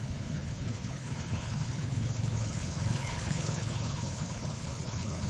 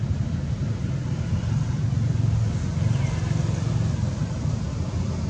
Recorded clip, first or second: second